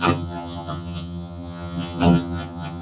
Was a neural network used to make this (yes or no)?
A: yes